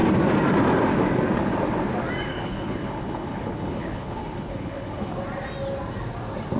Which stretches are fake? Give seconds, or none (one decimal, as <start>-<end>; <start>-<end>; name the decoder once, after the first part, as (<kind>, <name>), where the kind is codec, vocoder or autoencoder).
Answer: 2.3-5.1 (codec, HILCodec)